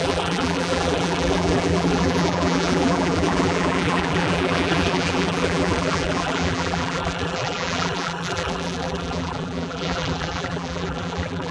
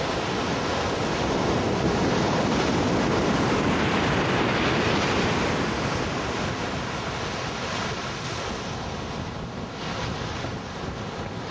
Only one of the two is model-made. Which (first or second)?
first